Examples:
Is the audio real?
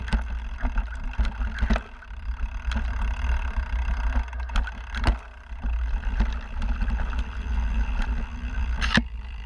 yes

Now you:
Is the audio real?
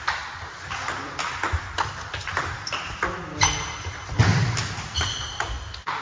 yes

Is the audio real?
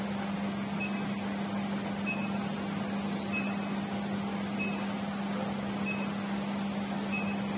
yes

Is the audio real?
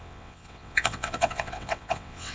no